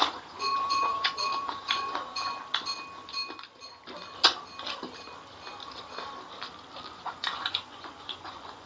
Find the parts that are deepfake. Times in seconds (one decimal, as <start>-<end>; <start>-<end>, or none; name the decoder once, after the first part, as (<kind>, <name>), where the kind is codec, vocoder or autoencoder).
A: 0.0-2.4 (vocoder, Vocos); 6.9-8.7